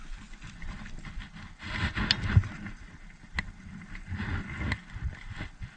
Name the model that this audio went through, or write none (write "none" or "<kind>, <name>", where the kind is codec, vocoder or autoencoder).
none